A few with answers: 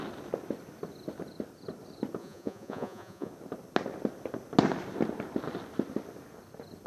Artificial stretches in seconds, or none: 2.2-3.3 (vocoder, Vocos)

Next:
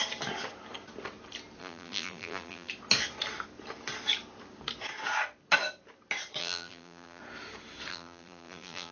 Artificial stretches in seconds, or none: 1.6-2.7 (vocoder, BigVGAN v2); 6.4-7.2; 7.9-8.9

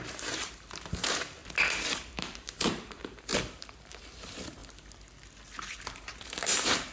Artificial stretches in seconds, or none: 0.0-1.4 (vocoder, BigVGAN v2); 2.1-4.6; 5.8-6.9

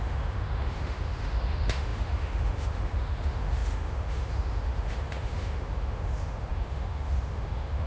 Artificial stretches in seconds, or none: 0.0-7.9 (autoencoder, DAC-VAE)

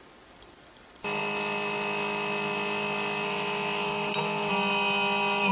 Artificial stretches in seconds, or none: none

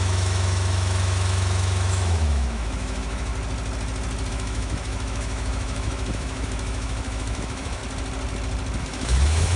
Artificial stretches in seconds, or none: 0.0-3.3 (autoencoder, DAC-VAE); 4.3-7.8; 8.8-9.6

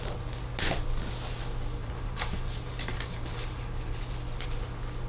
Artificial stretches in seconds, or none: 1.8-4.0 (vocoder, BigVGAN v2)

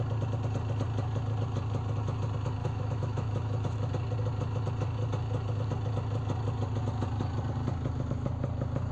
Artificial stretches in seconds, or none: 2.6-3.9 (autoencoder, DAC-VAE)